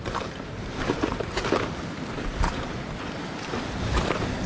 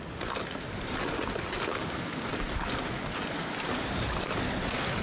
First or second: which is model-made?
first